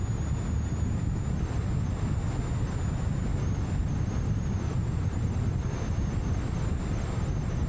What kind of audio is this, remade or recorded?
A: recorded